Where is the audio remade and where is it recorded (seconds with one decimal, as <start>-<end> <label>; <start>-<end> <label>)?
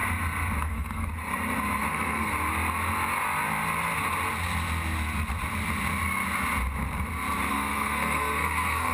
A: 0.0-0.6 recorded; 0.6-1.1 remade; 1.1-1.9 recorded; 1.9-2.3 remade; 2.3-7.5 recorded; 7.5-8.9 remade